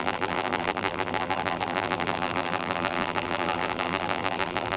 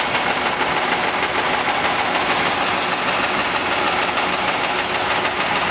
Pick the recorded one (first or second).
second